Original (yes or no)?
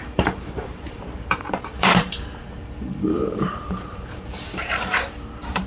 no